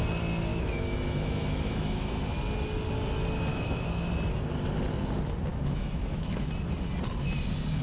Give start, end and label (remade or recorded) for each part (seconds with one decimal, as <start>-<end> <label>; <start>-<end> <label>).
0.0-0.5 recorded; 0.5-2.1 remade; 2.1-3.5 recorded; 3.5-4.1 remade; 4.1-5.5 recorded; 5.5-6.5 remade; 6.5-7.8 recorded